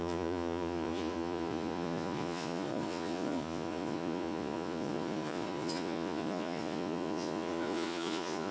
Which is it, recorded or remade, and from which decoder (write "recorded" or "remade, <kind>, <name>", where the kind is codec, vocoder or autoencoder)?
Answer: remade, vocoder, Vocos